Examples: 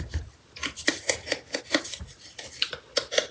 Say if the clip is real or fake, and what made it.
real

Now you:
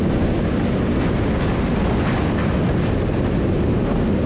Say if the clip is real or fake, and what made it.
real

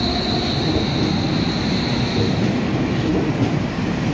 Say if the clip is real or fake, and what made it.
real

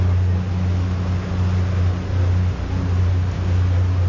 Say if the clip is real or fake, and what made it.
real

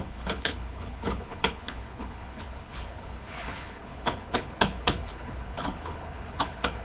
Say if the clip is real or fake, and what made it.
fake, codec, HILCodec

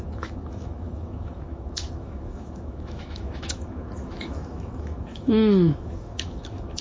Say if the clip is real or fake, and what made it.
fake, autoencoder, DAC-VAE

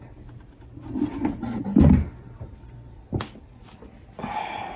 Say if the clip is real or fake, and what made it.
real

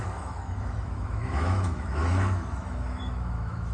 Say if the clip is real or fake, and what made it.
fake, autoencoder, DAC-VAE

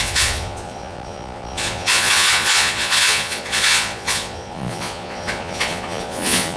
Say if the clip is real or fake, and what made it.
fake, vocoder, Vocos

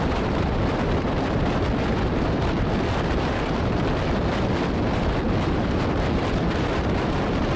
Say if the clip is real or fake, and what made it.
fake, vocoder, BigVGAN v2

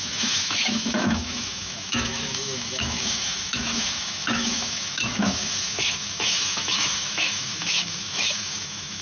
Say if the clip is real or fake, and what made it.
fake, autoencoder, DAC-VAE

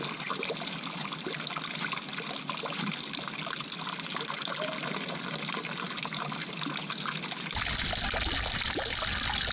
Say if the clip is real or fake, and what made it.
real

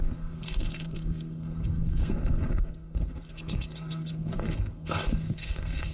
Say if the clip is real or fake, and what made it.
fake, codec, SNAC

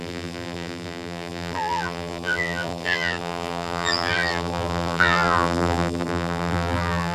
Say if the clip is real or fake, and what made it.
fake, vocoder, BigVGAN v2